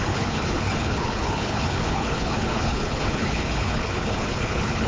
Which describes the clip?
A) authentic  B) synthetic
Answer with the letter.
B